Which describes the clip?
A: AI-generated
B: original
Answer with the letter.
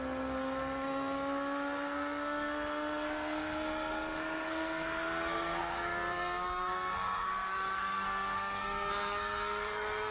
A